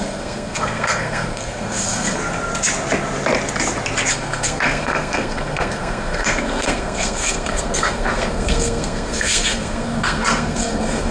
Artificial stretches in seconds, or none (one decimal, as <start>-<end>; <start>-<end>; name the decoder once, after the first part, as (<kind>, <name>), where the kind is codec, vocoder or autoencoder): 0.0-2.2 (codec, SNAC); 4.1-11.1